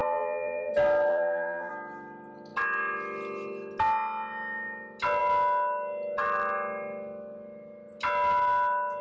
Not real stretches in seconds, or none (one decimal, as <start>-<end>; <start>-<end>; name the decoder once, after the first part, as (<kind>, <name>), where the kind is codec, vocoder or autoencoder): 0.0-0.7 (vocoder, BigVGAN v2); 1.1-1.7